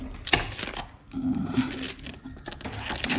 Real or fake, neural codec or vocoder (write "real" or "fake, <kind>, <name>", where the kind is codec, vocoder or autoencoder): real